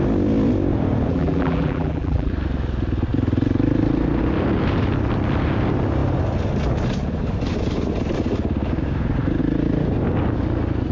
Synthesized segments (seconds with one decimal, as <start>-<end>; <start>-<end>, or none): 1.1-2.3